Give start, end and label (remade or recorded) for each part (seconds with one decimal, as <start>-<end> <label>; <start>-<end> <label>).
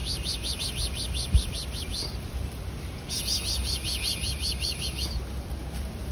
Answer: 0.0-0.6 remade; 0.6-6.1 recorded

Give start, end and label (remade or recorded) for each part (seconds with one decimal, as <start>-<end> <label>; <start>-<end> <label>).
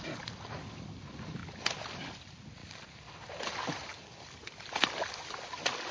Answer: 0.0-2.6 remade; 2.6-3.5 recorded; 3.5-3.9 remade; 3.9-4.7 recorded; 4.7-5.9 remade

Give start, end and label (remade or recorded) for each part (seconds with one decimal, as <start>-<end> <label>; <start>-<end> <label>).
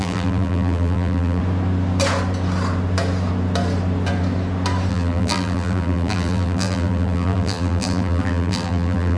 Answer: 0.0-1.4 remade; 1.4-4.9 recorded; 4.9-9.2 remade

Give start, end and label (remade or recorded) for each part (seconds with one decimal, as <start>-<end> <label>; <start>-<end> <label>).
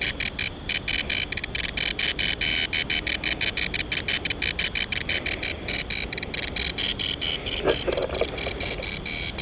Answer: 0.0-9.4 recorded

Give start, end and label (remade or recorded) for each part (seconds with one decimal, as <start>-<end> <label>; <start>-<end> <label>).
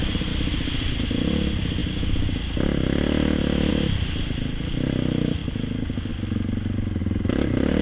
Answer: 0.0-7.0 recorded; 7.0-7.8 remade